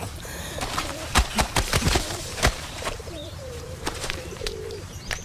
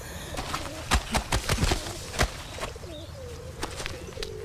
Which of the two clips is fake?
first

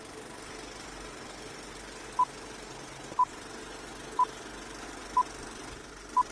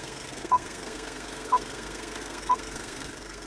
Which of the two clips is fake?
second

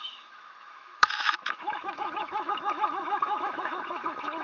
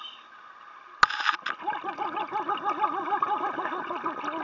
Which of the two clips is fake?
first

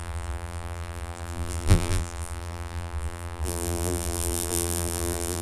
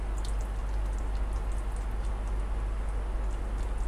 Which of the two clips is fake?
first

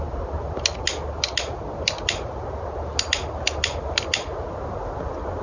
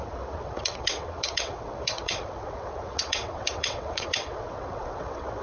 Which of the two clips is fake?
second